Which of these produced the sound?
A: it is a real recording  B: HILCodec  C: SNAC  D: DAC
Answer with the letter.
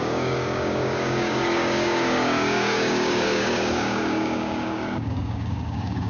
D